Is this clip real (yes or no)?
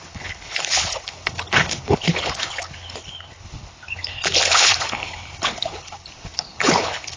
no